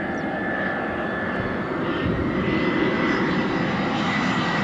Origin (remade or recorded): recorded